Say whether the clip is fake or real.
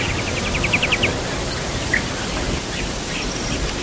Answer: real